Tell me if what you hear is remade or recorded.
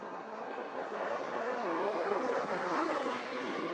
remade